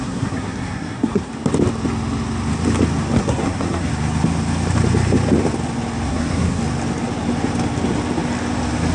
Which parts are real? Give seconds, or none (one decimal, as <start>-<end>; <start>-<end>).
1.3-3.2; 3.9-6.1; 6.6-8.9